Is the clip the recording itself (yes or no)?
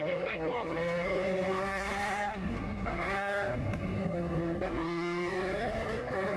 no